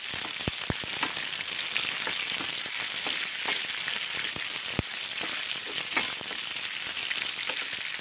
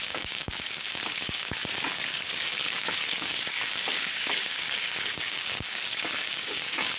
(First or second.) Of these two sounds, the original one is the first